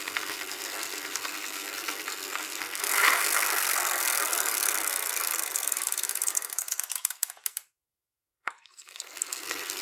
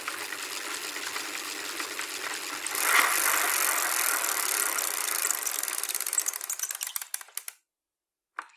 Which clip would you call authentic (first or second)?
second